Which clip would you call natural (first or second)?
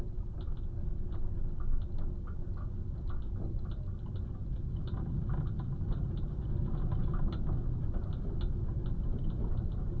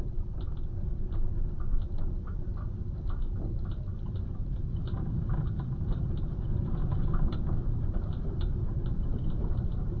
first